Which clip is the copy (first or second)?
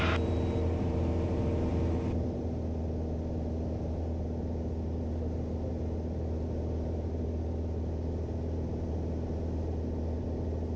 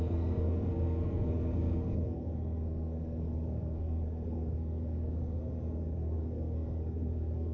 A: second